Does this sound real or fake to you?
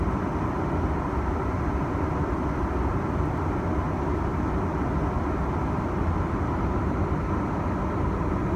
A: real